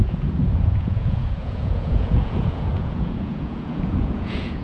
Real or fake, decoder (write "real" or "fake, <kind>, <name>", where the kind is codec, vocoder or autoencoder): fake, vocoder, Vocos